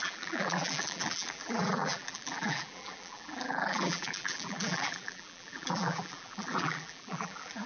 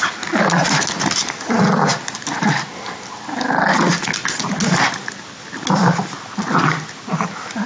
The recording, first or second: second